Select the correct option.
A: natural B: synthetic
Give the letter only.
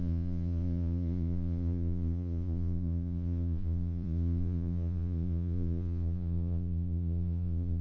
B